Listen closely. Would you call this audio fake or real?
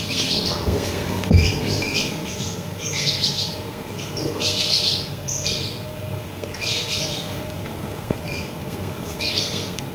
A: fake